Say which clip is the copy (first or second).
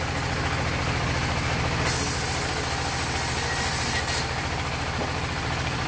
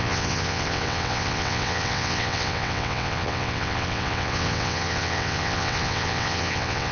second